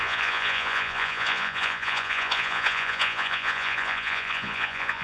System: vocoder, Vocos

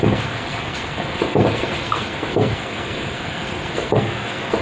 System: codec, SNAC